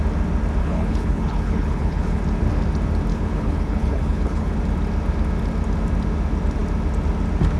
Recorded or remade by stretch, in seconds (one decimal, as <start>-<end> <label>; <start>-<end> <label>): 0.0-0.6 recorded; 0.6-2.2 remade; 2.2-3.1 recorded; 3.1-4.6 remade; 4.6-7.6 recorded